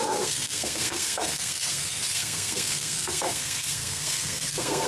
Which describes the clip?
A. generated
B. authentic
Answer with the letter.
A